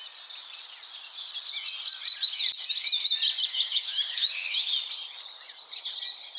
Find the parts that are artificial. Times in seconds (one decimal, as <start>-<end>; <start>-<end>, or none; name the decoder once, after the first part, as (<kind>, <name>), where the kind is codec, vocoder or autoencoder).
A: 3.5-4.7 (codec, DAC)